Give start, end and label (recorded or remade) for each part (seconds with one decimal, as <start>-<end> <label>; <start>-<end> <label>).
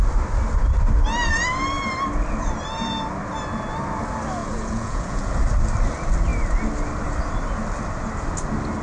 0.0-4.4 recorded; 4.4-5.3 remade; 5.3-8.8 recorded